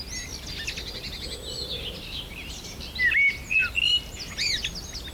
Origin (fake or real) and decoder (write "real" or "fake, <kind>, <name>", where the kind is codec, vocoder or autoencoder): real